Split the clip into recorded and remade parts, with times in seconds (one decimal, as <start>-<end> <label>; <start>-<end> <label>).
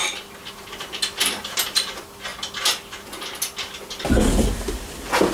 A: 0.0-5.3 recorded